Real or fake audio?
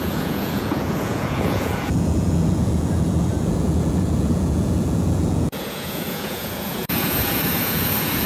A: fake